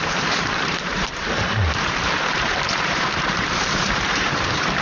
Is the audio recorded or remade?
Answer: remade